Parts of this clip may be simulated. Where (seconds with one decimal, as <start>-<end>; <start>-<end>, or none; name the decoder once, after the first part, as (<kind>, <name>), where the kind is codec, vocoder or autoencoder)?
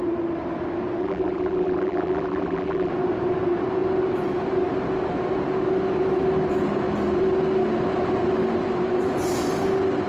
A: 1.0-2.9 (vocoder, BigVGAN v2)